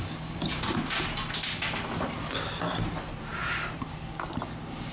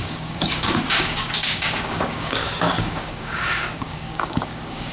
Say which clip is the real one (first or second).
first